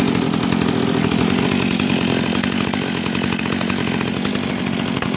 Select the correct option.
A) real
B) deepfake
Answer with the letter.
A